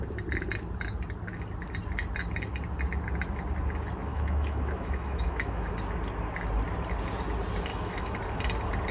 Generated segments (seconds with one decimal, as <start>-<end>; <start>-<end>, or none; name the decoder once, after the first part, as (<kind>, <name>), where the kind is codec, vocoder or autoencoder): 4.1-5.7 (autoencoder, DAC-VAE); 7.7-8.2